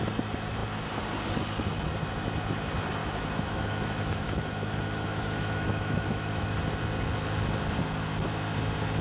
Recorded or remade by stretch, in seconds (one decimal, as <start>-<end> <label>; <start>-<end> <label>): 0.0-3.0 recorded; 3.0-6.6 remade; 6.6-9.0 recorded